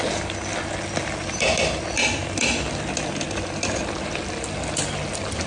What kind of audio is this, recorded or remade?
recorded